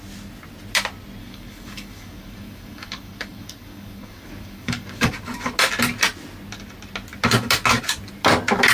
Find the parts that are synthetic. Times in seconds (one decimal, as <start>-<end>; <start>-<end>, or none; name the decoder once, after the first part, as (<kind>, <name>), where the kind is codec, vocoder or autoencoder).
1.2-5.1 (codec, DAC)

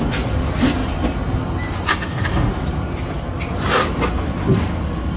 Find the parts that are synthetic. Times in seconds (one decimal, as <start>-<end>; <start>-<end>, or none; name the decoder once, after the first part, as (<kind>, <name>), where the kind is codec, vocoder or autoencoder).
1.9-2.5 (codec, DAC)